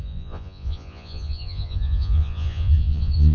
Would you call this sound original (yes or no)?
no